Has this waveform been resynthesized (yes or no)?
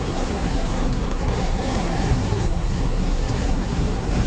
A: yes